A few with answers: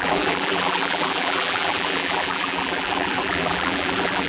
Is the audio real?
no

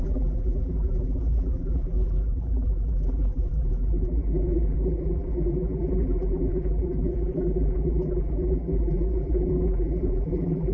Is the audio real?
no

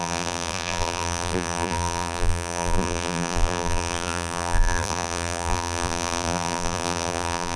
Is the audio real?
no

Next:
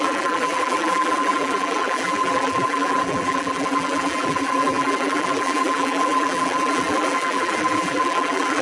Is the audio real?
no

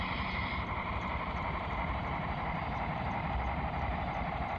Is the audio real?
no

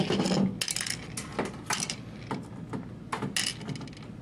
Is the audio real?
yes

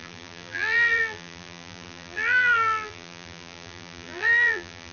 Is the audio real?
no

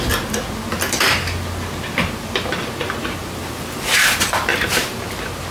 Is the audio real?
yes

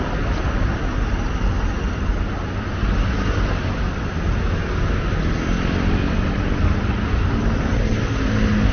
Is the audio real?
yes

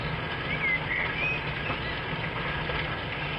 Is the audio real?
yes